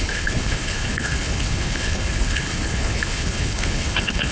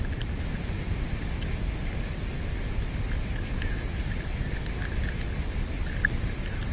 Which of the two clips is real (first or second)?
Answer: second